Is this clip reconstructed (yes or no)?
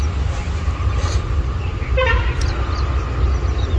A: no